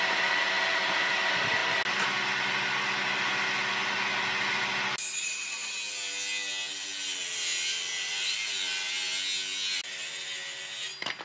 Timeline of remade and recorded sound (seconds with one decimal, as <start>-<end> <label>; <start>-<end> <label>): 0.0-11.2 recorded